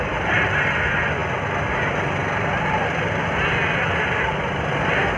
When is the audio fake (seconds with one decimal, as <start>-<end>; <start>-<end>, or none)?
none